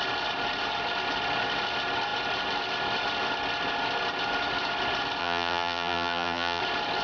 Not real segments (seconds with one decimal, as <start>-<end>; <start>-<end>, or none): 5.2-6.6

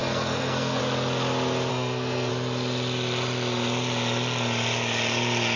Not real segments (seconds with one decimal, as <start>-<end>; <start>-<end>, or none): 0.0-0.8; 1.7-2.3